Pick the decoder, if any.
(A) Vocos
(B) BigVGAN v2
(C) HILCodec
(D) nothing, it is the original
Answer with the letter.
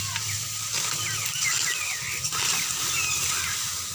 D